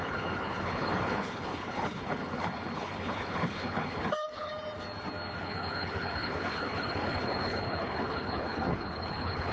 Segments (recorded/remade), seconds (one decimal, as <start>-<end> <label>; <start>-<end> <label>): 0.0-4.5 remade; 4.5-5.4 recorded; 5.4-9.5 remade